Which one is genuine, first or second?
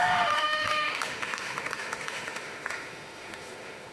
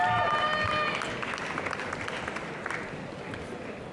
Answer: second